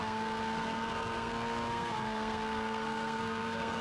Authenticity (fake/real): fake